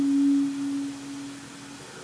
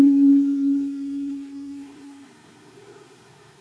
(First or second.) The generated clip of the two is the second